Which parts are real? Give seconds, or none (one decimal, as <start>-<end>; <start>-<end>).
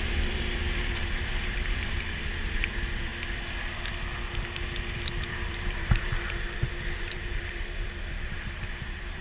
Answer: 3.1-5.3; 6.1-7.0